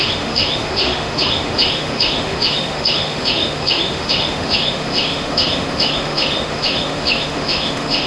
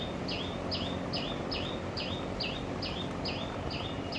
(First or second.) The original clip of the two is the second